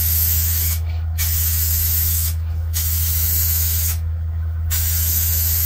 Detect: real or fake fake